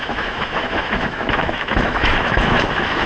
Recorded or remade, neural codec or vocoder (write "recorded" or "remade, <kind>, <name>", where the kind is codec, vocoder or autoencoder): remade, autoencoder, DAC-VAE